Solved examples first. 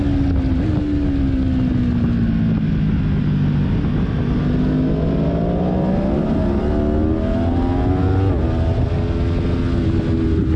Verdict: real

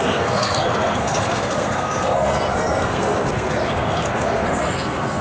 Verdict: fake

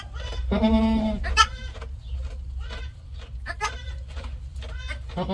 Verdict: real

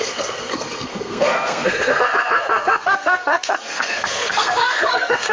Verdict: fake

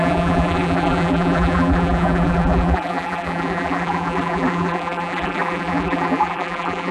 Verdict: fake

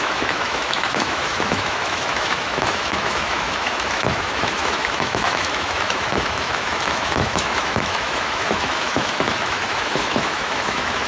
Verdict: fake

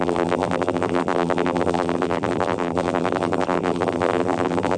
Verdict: fake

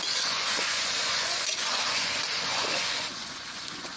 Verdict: fake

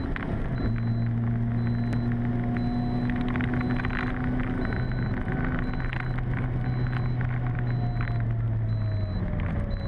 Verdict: real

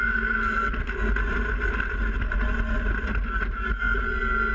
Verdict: real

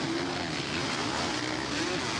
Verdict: real